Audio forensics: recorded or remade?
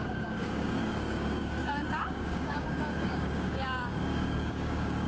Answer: remade